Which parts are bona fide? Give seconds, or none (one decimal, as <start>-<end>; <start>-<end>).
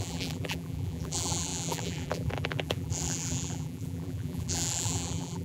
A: none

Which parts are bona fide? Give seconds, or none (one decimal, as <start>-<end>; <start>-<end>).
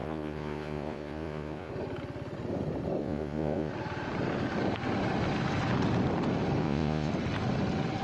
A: 1.7-3.0; 3.7-6.6; 7.1-8.0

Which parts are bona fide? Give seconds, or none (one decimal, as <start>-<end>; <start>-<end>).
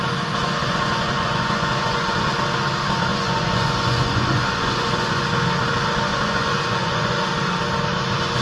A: 0.0-0.4; 2.4-3.1; 5.2-6.1; 7.3-8.4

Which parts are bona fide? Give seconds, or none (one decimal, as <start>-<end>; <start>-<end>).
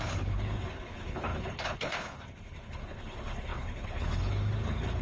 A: none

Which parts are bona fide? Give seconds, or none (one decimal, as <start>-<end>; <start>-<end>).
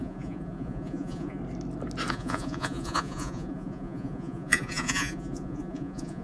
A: 1.4-2.1